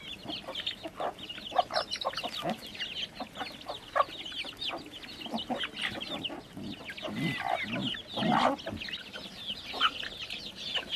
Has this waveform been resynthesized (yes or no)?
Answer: no